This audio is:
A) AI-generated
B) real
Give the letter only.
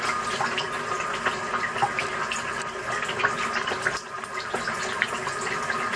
B